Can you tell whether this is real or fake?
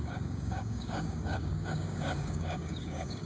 fake